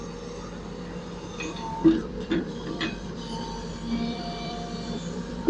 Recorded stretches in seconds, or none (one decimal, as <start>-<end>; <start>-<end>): 0.0-2.0